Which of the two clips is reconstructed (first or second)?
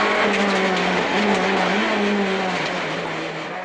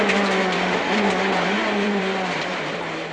second